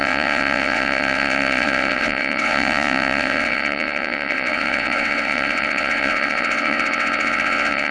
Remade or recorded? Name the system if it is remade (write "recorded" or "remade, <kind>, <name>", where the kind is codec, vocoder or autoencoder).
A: remade, vocoder, WaveNeXt